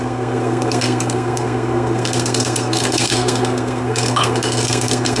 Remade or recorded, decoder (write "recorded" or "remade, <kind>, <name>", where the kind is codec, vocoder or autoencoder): remade, codec, SNAC